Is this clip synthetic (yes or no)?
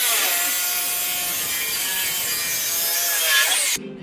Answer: no